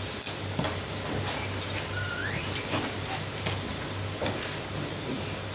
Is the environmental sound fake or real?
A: real